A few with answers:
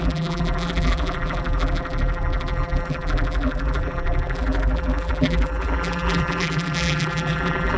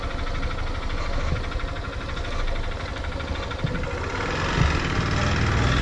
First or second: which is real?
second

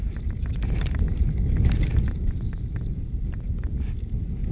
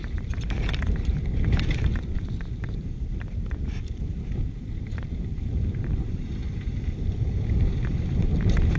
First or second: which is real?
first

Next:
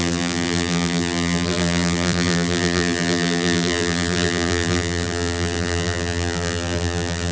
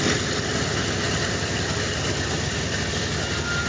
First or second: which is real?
second